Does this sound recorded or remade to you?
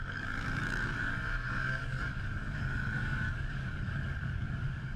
remade